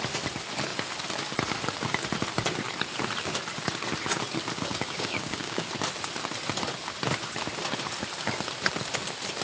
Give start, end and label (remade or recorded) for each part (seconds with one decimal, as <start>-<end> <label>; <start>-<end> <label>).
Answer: 0.0-4.7 recorded; 4.7-5.7 remade; 5.7-9.4 recorded